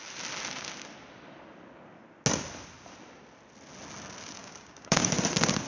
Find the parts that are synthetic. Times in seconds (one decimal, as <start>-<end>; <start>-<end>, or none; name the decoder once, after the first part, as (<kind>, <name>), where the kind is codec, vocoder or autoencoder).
4.4-5.1 (codec, DAC)